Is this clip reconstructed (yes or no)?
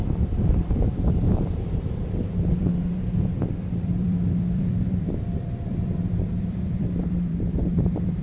yes